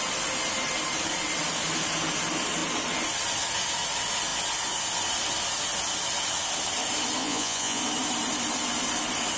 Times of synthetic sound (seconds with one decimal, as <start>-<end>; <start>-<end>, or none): 7.2-7.8